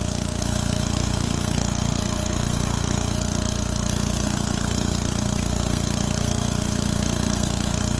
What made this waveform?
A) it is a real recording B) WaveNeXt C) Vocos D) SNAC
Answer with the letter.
D